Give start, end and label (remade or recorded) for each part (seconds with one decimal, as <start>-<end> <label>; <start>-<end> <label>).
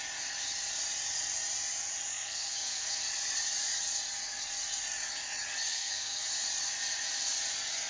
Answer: 0.0-2.1 recorded; 2.1-3.0 remade; 3.0-5.7 recorded; 5.7-6.2 remade; 6.2-7.9 recorded